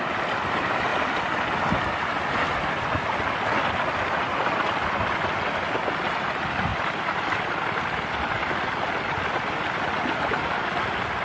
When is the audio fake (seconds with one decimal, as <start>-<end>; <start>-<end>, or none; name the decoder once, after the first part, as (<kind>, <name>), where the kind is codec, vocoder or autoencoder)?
6.7-10.5 (vocoder, BigVGAN v2)